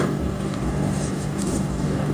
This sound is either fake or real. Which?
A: fake